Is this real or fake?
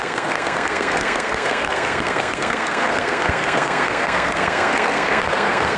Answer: fake